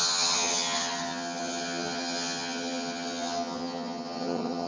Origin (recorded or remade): remade